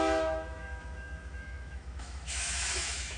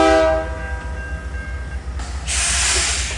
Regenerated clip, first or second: first